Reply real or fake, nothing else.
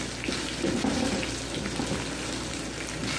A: real